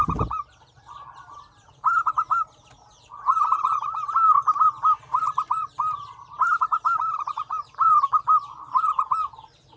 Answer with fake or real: fake